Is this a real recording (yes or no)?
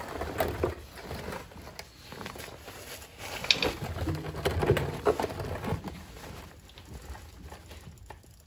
yes